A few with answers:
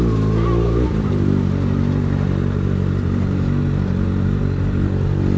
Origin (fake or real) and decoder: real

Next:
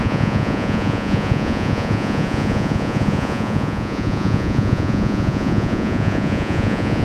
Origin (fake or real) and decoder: fake, vocoder, Vocos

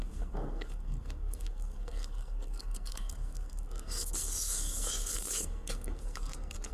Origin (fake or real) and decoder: fake, codec, SNAC